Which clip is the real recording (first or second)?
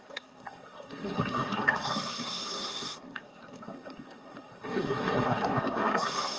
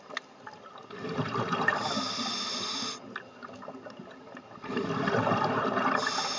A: second